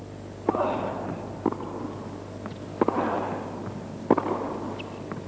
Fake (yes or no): no